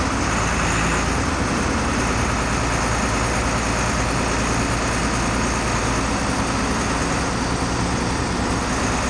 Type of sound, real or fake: real